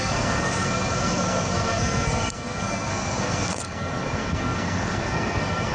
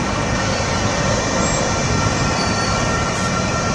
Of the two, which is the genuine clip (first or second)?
second